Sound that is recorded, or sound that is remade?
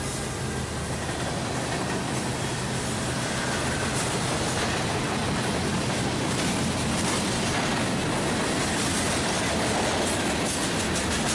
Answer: recorded